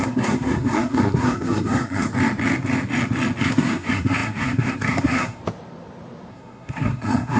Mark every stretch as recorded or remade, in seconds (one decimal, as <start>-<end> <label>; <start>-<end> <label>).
0.0-2.1 remade; 2.1-3.4 recorded; 3.4-5.4 remade; 5.4-6.3 recorded; 6.3-7.4 remade